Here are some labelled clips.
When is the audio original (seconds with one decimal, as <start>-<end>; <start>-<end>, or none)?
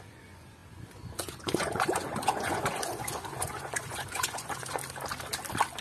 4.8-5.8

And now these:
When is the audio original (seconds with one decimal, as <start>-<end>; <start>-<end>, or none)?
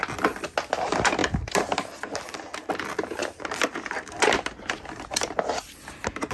0.0-6.3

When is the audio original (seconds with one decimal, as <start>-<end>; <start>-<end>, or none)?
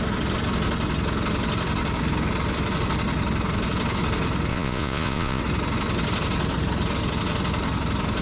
0.0-4.5; 5.4-8.2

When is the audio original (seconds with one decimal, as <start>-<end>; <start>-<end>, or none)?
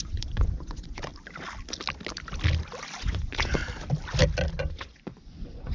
1.1-3.0; 3.6-4.5